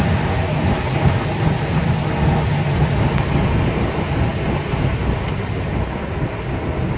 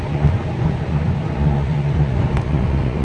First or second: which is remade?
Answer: second